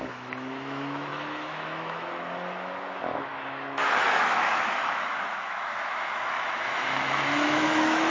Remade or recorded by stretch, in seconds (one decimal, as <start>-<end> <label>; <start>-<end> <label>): 0.0-8.1 remade